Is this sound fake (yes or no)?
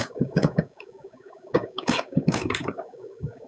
yes